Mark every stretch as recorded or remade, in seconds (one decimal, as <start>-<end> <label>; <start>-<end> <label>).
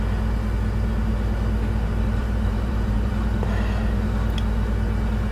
0.0-2.2 recorded; 2.2-3.1 remade; 3.1-5.3 recorded